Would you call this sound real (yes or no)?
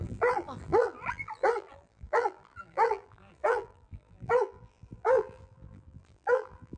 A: no